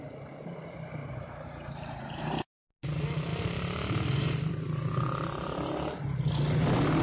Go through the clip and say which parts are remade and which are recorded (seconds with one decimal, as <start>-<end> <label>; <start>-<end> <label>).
0.0-1.0 recorded; 1.0-2.5 remade; 2.5-3.3 recorded; 3.3-4.5 remade; 4.5-7.0 recorded